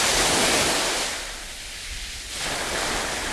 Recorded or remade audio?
recorded